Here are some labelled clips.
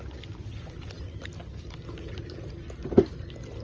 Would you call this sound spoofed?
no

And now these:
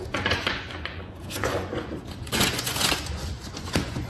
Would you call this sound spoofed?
yes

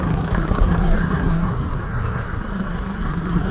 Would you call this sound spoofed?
yes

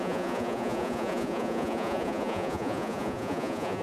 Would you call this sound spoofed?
yes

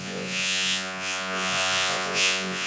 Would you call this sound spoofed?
yes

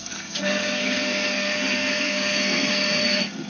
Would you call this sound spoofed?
yes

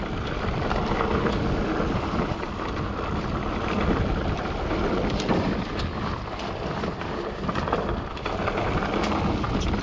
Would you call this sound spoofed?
no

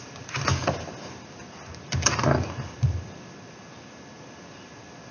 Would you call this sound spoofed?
no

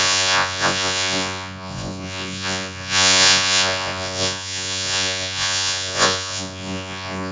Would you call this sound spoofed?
yes